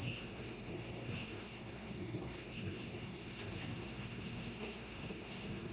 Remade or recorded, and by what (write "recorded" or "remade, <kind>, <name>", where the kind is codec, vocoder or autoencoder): remade, codec, SNAC